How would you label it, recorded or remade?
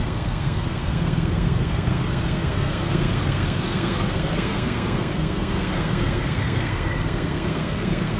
remade